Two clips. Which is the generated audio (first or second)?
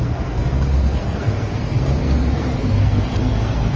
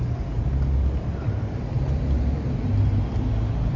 first